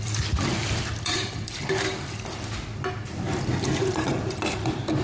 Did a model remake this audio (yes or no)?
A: yes